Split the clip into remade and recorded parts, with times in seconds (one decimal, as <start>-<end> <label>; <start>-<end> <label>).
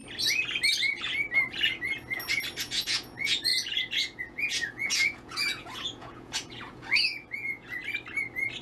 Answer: 0.0-2.6 recorded; 2.6-7.8 remade; 7.8-8.6 recorded